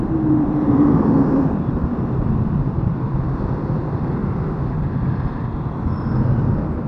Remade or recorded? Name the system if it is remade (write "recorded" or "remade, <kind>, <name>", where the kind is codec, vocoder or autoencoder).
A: remade, vocoder, BigVGAN v2